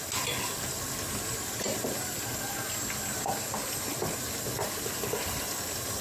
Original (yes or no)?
yes